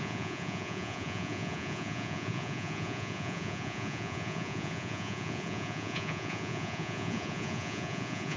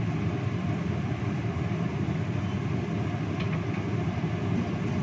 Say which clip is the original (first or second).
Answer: second